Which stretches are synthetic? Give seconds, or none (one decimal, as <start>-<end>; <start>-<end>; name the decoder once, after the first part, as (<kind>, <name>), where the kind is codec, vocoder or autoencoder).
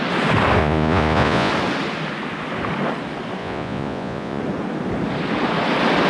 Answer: 0.6-1.5 (vocoder, Vocos); 3.4-4.4